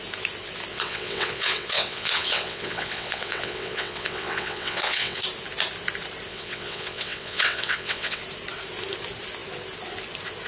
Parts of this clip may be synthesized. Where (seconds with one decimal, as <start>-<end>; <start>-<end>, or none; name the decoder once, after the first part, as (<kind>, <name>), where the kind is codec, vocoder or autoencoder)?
0.7-5.2 (vocoder, WaveNeXt); 6.3-8.2